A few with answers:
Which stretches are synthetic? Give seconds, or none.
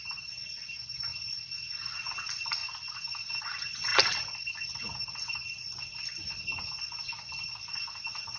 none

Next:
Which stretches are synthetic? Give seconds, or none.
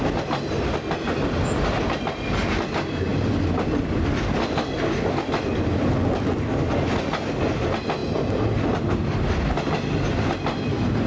none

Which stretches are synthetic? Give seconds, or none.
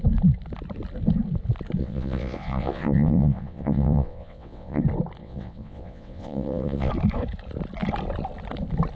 1.8-4.8 (vocoder, WaveNeXt); 5.2-6.9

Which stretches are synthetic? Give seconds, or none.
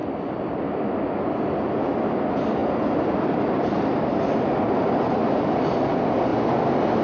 none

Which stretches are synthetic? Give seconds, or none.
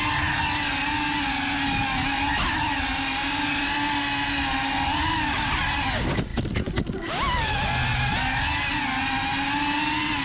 none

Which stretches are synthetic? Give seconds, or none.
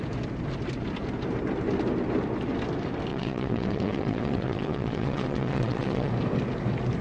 3.1-6.1 (vocoder, WaveNeXt)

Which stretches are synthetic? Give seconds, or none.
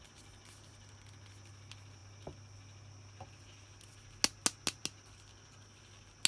none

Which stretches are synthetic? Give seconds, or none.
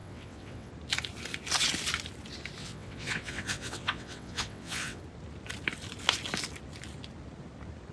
0.0-0.7 (vocoder, WaveNeXt); 2.6-5.0